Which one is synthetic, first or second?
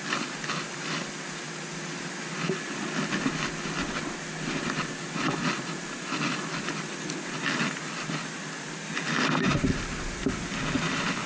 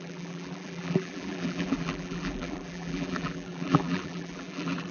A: second